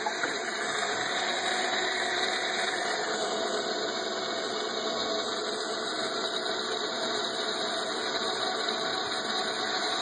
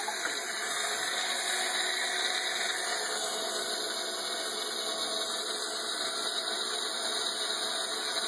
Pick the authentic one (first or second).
second